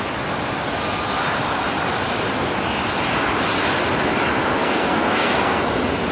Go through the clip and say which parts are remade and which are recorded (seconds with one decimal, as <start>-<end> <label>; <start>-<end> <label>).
0.0-4.5 recorded; 4.5-5.6 remade; 5.6-6.1 recorded